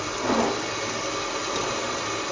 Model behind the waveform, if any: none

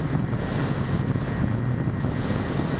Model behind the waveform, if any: none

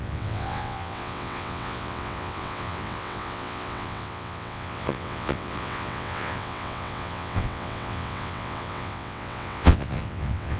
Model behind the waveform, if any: vocoder, WaveNeXt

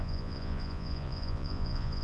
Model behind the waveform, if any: vocoder, Vocos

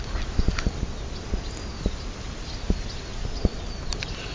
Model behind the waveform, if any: none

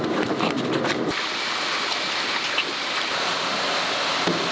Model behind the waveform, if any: none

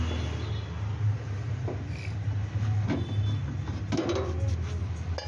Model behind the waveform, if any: none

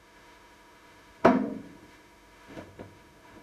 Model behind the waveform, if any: autoencoder, DAC-VAE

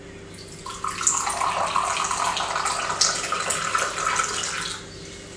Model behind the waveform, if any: none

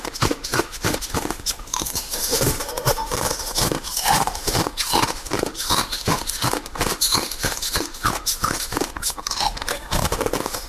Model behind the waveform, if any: autoencoder, DAC-VAE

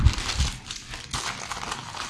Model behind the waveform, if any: none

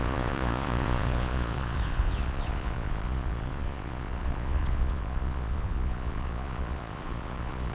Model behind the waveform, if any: vocoder, Vocos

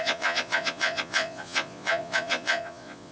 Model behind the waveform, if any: vocoder, Vocos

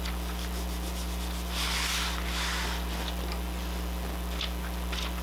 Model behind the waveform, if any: none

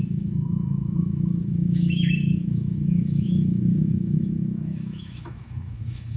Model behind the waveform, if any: autoencoder, DAC-VAE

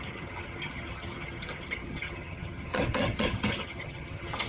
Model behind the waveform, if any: vocoder, HiFi-GAN